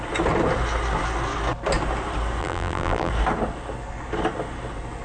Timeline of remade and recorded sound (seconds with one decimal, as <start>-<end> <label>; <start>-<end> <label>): 0.0-2.4 recorded; 2.4-3.1 remade; 3.1-5.0 recorded